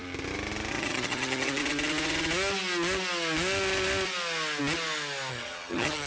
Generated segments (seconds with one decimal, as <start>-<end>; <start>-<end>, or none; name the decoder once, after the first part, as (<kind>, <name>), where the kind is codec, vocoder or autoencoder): 0.7-1.6 (vocoder, HiFi-GAN); 5.3-6.1